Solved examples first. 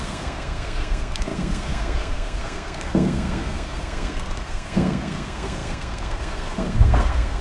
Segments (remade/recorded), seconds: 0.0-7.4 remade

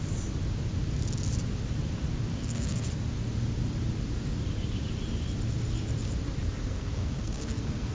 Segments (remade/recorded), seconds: 0.0-2.3 recorded; 2.3-2.9 remade; 2.9-6.6 recorded; 6.6-7.9 remade

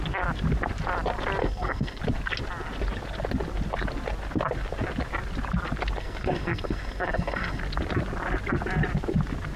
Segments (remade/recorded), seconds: 0.0-1.4 recorded; 1.4-2.0 remade; 2.0-6.0 recorded; 6.0-7.6 remade; 7.6-9.6 recorded

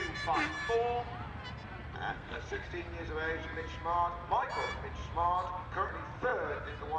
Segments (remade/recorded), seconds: 0.0-2.1 recorded; 2.1-2.7 remade; 2.7-7.0 recorded

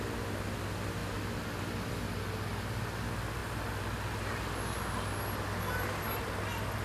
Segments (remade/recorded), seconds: 0.0-6.8 recorded

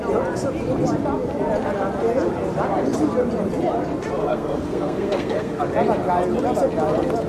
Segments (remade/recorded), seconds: 0.0-4.2 recorded; 4.2-5.6 remade; 5.6-7.3 recorded

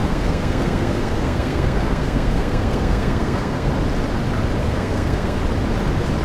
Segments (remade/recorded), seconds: 0.0-3.7 remade; 3.7-4.6 recorded; 4.6-5.4 remade; 5.4-6.2 recorded